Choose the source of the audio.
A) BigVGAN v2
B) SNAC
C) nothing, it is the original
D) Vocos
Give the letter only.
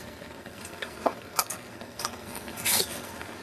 B